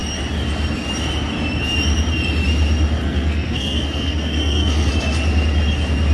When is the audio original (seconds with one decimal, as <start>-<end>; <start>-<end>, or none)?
0.0-3.0; 4.9-6.1